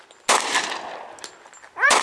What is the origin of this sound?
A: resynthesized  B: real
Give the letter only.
B